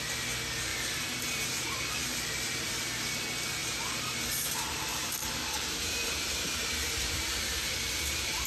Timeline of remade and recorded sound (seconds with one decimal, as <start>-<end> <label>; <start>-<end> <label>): 0.0-0.7 recorded; 0.7-2.7 remade; 2.7-3.6 recorded; 3.6-8.5 remade